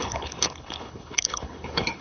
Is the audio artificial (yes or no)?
yes